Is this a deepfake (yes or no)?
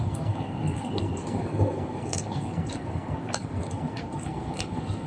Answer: yes